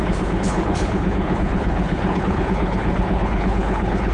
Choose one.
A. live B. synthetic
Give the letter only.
B